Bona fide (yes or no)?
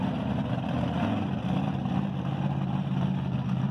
yes